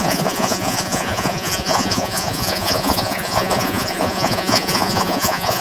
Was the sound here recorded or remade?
remade